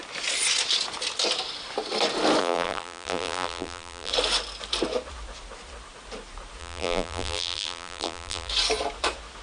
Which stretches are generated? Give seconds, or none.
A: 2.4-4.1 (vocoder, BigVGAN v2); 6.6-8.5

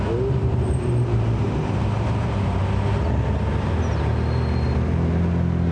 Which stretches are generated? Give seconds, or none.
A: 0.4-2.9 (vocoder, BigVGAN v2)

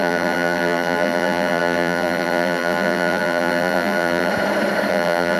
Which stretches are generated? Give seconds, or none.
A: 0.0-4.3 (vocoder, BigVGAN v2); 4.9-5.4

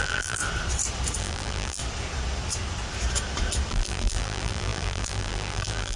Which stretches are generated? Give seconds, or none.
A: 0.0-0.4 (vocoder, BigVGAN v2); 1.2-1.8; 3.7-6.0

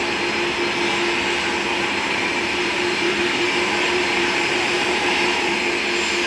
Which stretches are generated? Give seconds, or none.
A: 1.7-5.5 (vocoder, BigVGAN v2)

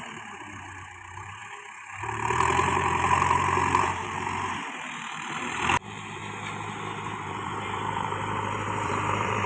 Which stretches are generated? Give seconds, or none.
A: 0.0-1.4 (vocoder, BigVGAN v2); 2.0-6.2; 7.1-9.5